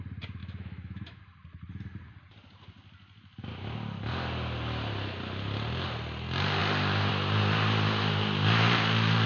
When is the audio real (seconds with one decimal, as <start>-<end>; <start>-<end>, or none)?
0.0-0.4; 1.2-9.3